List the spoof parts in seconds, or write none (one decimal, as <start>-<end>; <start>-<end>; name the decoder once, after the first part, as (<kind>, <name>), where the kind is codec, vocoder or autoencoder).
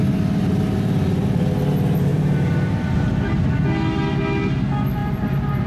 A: 2.1-3.5 (vocoder, BigVGAN v2); 5.0-5.7